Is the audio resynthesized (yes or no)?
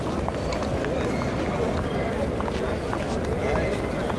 no